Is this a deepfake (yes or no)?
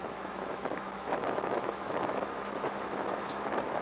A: yes